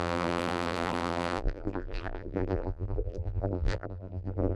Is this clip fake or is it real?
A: fake